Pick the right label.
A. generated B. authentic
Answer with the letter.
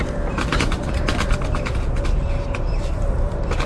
B